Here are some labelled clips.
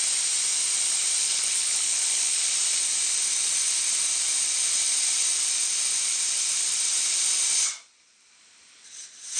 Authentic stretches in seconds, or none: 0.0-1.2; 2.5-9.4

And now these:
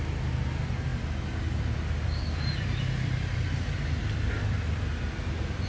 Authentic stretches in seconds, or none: 0.0-5.7

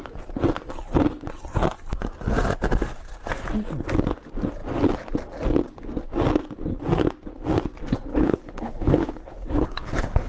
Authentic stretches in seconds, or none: 0.0-8.1

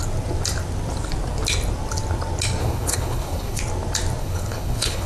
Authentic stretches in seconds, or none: 0.0-2.6; 3.6-4.2

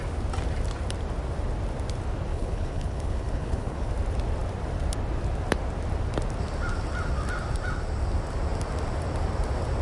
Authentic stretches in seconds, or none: 0.0-2.3; 3.9-9.8

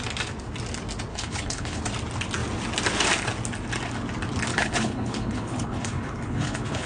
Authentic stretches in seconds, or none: 0.0-1.1; 1.8-4.5